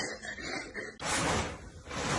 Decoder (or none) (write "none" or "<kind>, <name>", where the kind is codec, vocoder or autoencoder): none